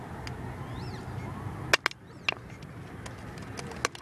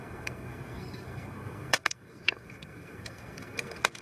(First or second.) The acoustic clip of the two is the first